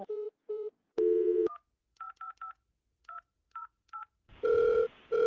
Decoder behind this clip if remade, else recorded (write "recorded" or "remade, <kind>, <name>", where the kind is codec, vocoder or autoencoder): remade, vocoder, Vocos